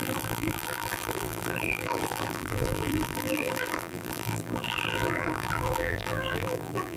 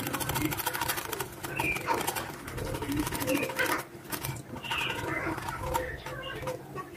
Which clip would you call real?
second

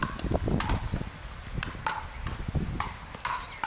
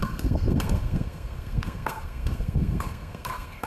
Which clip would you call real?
first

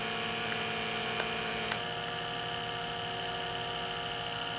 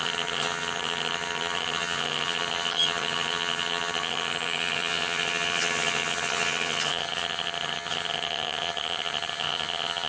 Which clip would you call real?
first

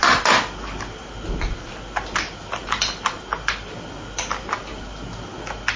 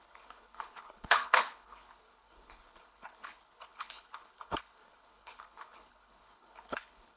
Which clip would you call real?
first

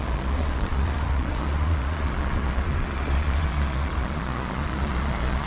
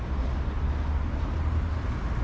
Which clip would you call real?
second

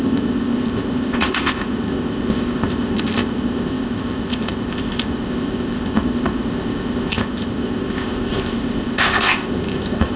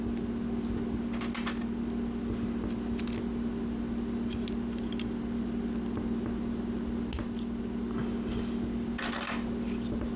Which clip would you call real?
second